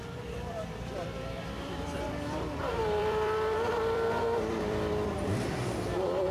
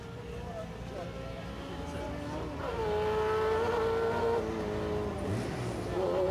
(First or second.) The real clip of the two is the second